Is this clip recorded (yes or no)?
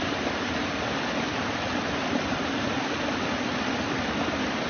yes